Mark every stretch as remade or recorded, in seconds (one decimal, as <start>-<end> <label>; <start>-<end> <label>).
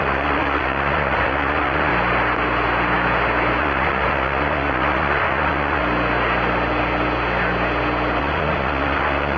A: 0.0-1.9 remade; 1.9-3.6 recorded; 3.6-5.8 remade; 5.8-8.2 recorded; 8.2-9.4 remade